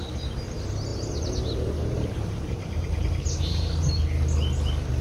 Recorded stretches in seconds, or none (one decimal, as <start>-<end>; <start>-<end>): 0.0-0.9; 3.9-5.0